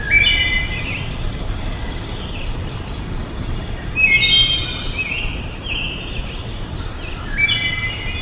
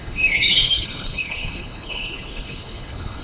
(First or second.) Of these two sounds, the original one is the first